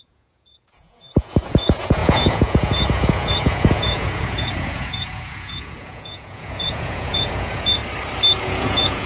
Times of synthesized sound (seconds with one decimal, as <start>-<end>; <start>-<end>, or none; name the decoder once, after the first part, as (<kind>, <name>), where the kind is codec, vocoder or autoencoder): 0.0-7.8 (vocoder, Vocos); 8.4-9.1